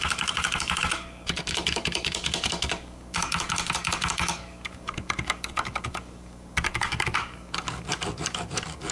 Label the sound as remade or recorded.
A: remade